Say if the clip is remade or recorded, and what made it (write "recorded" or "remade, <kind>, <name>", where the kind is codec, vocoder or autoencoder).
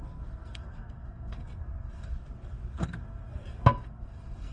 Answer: remade, codec, SNAC